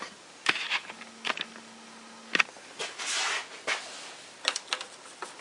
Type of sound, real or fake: real